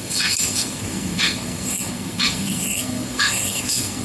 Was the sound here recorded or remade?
remade